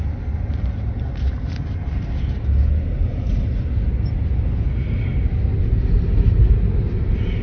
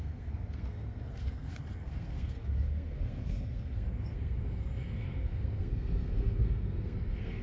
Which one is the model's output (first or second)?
second